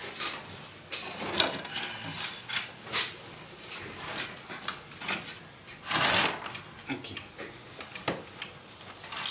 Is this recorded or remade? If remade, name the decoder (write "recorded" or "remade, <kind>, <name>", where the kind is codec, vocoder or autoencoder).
recorded